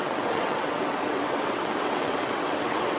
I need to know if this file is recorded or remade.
remade